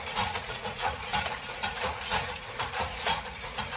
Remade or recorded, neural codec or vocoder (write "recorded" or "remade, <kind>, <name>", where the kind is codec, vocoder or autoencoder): remade, vocoder, Vocos